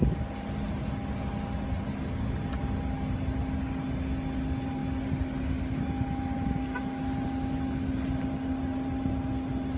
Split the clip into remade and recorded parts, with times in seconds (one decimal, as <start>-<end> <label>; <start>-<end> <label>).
0.0-9.8 recorded